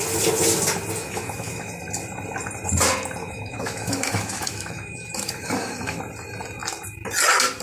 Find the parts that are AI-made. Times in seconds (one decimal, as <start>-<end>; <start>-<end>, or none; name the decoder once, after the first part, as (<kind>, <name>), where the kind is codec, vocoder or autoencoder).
1.0-1.7 (autoencoder, DAC-VAE); 3.2-6.0